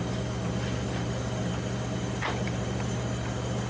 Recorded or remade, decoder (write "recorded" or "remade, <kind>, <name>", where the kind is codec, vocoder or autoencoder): recorded